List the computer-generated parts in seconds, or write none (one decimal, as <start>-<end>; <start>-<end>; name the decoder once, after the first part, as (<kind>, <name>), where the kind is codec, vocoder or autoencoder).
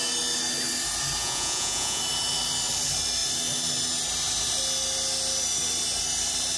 1.2-2.0 (vocoder, Vocos)